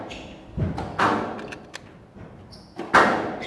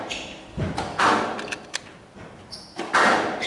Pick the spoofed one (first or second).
second